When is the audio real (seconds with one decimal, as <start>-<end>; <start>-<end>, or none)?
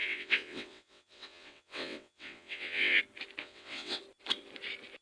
3.0-3.4; 4.0-5.0